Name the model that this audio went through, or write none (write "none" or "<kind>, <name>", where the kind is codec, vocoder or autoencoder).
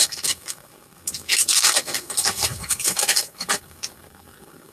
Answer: codec, SNAC